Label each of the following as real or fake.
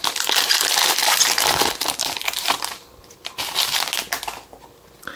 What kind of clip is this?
real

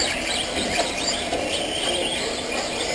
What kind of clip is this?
real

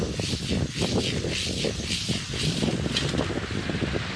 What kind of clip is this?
real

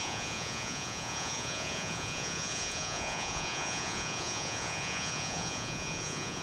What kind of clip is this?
fake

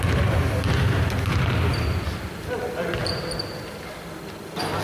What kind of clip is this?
real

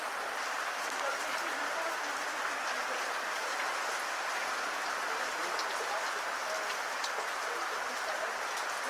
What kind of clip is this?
real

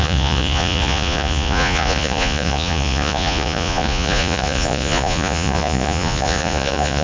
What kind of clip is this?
fake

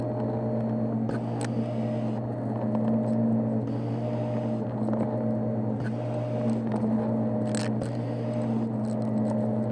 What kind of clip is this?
real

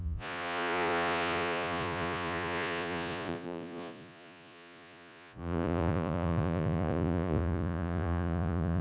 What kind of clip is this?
fake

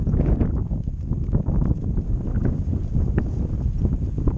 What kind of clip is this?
real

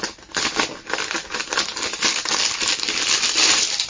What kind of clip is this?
real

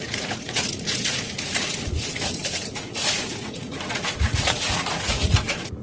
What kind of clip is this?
fake